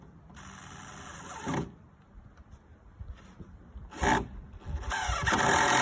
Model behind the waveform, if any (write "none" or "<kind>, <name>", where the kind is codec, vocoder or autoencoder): none